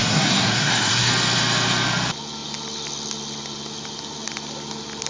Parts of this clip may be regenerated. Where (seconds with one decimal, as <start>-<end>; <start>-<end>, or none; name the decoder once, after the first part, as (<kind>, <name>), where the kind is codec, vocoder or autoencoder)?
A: 0.0-1.1 (codec, SNAC)